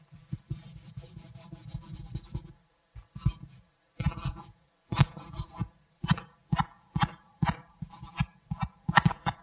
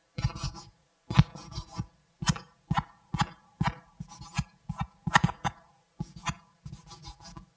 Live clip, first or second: second